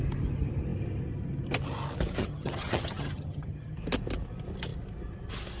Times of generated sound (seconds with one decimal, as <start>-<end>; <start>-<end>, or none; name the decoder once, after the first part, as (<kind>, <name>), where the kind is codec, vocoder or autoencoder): 2.2-3.8 (vocoder, HiFi-GAN)